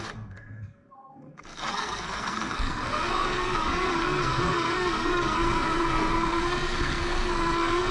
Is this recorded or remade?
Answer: remade